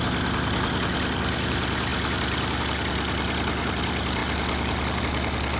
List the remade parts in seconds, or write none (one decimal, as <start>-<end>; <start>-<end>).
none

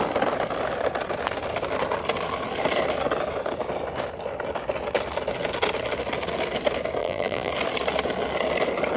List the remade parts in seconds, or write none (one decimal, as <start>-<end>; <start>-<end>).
7.0-7.5

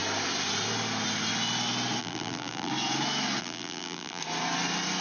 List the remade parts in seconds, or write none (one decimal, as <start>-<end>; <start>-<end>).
2.0-2.7; 3.4-4.2

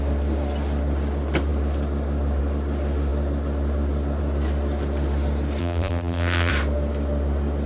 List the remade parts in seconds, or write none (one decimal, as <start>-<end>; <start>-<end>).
5.6-6.5

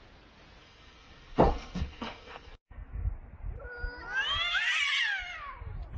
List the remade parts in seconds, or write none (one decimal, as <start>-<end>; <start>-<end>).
0.6-3.1

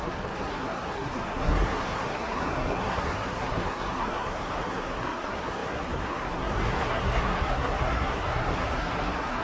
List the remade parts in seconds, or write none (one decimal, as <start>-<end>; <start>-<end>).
0.0-9.4